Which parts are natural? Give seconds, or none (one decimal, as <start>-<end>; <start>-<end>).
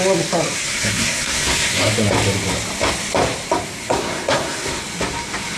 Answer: 0.0-0.6; 1.9-3.8; 4.8-5.6